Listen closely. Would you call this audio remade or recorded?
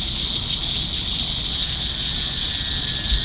recorded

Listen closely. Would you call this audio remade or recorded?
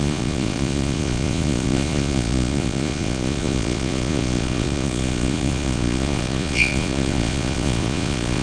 remade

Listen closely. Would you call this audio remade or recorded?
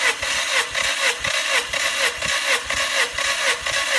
recorded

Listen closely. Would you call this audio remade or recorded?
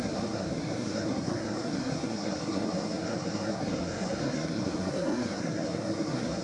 remade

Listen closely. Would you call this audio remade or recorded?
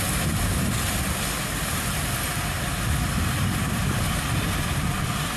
remade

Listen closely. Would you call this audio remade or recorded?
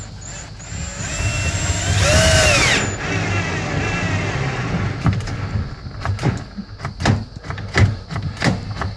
recorded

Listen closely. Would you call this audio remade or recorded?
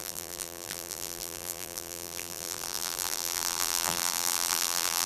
remade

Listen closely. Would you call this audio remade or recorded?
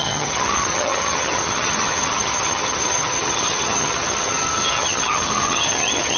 remade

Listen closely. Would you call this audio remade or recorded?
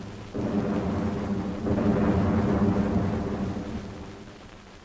recorded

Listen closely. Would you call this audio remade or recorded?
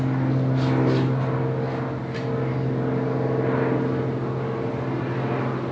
recorded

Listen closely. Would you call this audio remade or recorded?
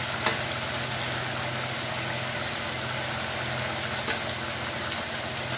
recorded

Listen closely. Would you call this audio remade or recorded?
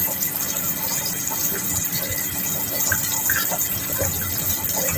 recorded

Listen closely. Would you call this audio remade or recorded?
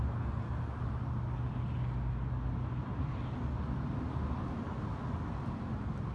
recorded